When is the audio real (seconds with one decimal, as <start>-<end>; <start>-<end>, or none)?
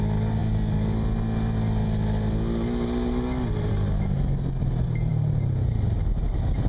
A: 0.0-6.7